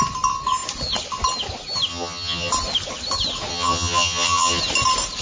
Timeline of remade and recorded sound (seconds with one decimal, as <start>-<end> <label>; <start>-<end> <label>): 0.0-1.9 recorded; 1.9-2.5 remade; 2.5-3.5 recorded; 3.5-4.6 remade; 4.6-5.2 recorded

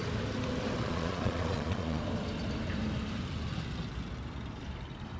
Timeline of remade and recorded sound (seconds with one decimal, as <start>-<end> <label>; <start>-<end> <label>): 0.0-0.8 recorded; 0.8-2.0 remade; 2.0-5.2 recorded

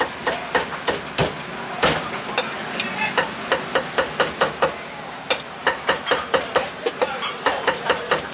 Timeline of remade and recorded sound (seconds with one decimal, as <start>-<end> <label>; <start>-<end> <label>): 0.0-5.6 recorded; 5.6-7.8 remade; 7.8-8.3 recorded

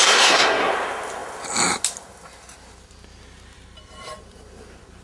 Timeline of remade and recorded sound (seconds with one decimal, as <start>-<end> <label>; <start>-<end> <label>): 0.0-0.7 remade; 0.7-5.0 recorded